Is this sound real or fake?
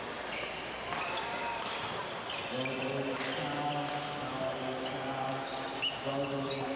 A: real